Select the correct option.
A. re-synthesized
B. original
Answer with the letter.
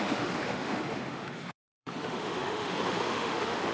A